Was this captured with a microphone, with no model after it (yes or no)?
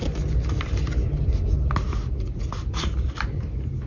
yes